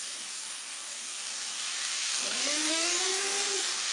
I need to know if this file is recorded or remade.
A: remade